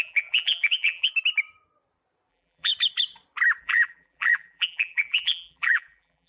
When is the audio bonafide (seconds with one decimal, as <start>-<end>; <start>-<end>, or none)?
1.1-2.3; 2.7-3.6